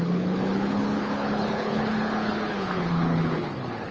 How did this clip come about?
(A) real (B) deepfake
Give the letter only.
B